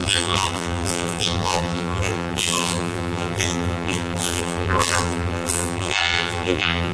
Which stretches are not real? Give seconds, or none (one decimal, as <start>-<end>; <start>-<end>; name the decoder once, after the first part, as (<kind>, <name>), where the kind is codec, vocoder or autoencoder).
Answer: 0.0-6.9 (vocoder, BigVGAN v2)